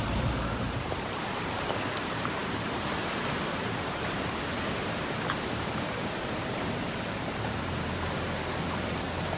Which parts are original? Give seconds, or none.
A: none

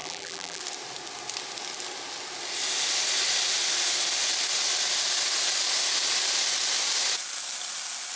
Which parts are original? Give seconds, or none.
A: 0.6-8.2